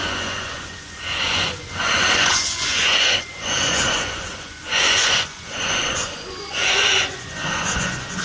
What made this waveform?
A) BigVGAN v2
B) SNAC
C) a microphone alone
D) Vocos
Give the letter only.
D